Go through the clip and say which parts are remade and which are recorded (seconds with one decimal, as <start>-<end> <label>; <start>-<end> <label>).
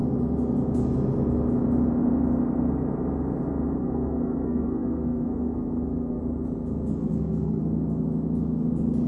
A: 0.0-3.8 recorded; 3.8-6.2 remade; 6.2-7.0 recorded; 7.0-7.6 remade; 7.6-9.1 recorded